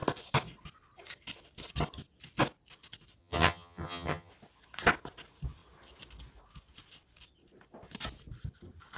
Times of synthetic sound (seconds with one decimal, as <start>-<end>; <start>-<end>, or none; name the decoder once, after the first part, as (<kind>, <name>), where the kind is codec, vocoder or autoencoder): 3.2-4.3 (vocoder, HiFi-GAN)